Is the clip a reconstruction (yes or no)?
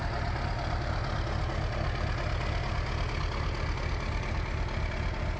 no